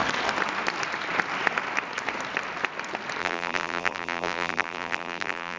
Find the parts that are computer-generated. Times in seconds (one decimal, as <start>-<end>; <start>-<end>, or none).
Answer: 3.2-5.6